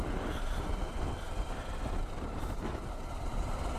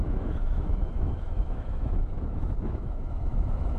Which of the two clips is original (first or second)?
first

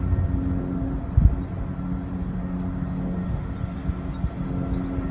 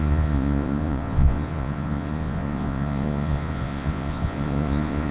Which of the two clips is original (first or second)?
first